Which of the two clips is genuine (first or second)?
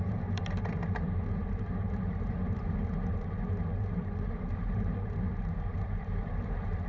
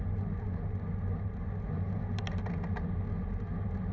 second